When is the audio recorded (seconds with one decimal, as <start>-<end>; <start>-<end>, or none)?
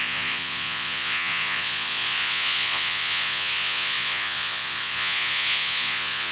none